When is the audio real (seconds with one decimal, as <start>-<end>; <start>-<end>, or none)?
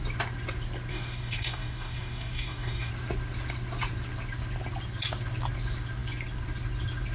0.0-0.9; 2.9-7.1